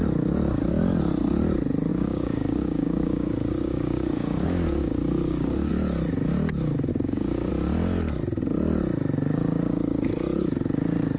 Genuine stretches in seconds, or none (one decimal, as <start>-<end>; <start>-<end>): 0.0-1.9; 5.7-6.9; 7.5-11.2